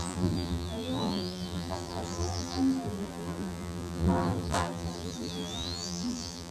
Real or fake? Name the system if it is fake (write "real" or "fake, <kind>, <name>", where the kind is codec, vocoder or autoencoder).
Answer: fake, vocoder, BigVGAN v2